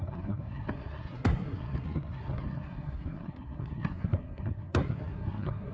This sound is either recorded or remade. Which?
remade